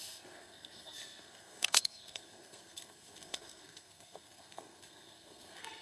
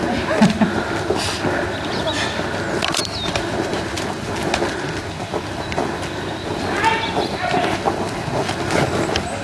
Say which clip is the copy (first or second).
first